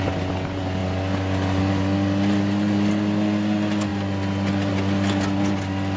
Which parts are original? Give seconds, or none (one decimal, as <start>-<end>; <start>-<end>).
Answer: 0.0-6.0